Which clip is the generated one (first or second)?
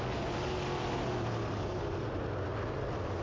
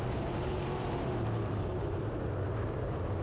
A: second